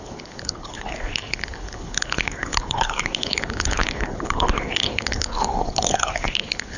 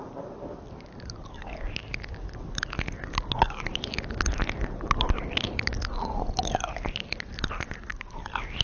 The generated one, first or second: first